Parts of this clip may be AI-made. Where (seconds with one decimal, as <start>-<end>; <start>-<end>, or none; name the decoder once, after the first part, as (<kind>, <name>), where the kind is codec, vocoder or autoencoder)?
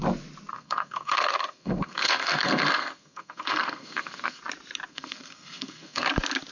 0.5-4.4 (codec, SNAC); 4.9-6.1